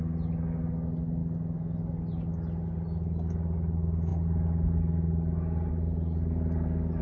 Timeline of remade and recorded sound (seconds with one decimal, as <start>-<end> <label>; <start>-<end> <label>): 0.0-7.0 recorded